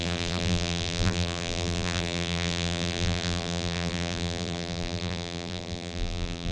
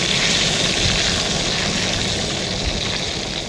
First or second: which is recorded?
second